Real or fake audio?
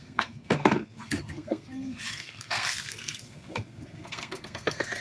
fake